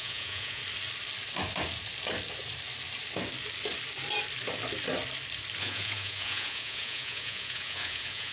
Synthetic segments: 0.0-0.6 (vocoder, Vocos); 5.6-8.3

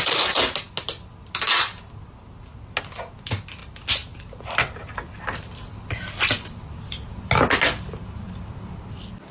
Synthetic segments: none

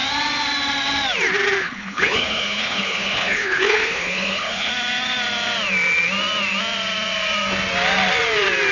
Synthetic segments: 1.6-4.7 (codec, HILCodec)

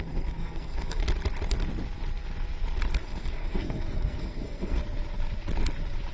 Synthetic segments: 0.0-1.0 (codec, SNAC); 3.0-4.8

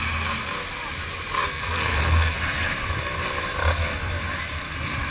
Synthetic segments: 1.5-2.4 (codec, SNAC)

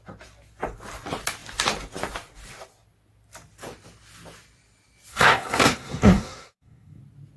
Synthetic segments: 5.1-7.0 (codec, SNAC)

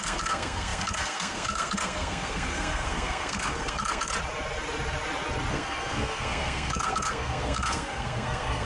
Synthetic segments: 0.0-4.1 (codec, SNAC); 5.5-8.6